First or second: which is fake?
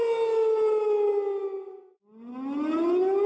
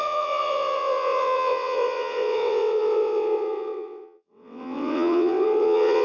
second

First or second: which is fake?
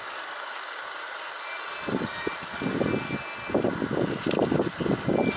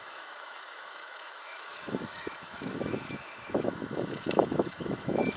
second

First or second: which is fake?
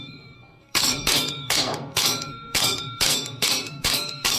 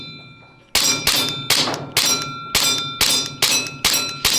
first